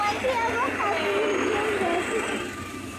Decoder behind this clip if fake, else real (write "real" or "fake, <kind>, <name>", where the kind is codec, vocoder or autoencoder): fake, vocoder, BigVGAN v2